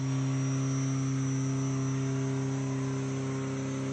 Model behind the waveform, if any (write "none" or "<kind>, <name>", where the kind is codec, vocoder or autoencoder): none